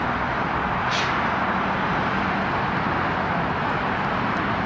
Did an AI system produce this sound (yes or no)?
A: no